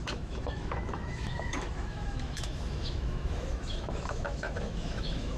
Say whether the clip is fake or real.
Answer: fake